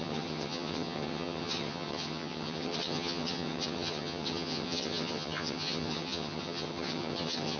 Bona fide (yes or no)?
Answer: no